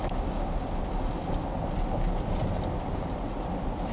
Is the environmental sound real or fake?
real